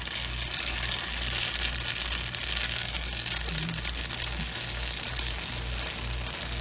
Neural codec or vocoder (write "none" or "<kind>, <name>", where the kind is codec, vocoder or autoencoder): none